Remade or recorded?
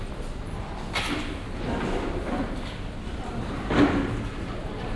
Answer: recorded